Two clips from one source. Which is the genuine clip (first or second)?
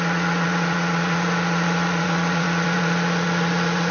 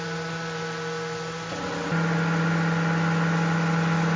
second